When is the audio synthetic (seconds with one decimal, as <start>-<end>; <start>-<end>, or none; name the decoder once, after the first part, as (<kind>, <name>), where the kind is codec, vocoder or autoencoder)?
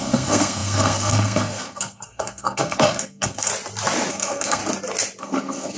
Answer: 0.0-3.5 (codec, SNAC); 4.1-4.6; 5.2-5.8